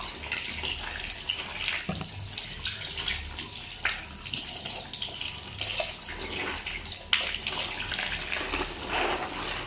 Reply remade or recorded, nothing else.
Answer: recorded